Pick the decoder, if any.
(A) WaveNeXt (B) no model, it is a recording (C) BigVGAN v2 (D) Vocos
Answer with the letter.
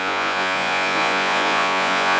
D